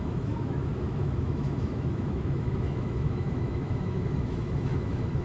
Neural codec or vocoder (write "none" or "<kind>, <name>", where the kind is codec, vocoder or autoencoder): autoencoder, DAC-VAE